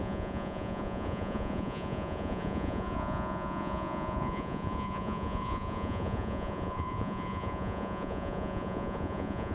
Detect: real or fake fake